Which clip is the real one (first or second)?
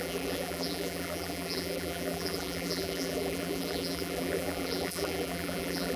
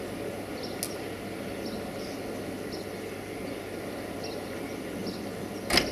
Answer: second